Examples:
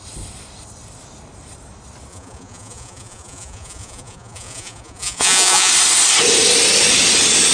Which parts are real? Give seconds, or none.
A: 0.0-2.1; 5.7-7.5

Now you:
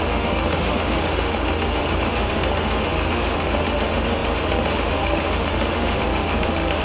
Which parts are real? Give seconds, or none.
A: none

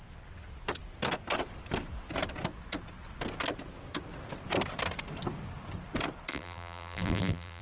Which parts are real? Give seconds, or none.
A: 0.0-6.3